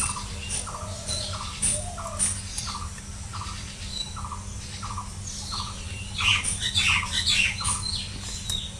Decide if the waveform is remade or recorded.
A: recorded